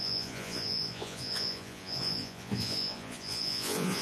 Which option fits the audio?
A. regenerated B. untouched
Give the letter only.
A